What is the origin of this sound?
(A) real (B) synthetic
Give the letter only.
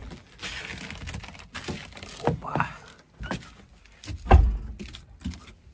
A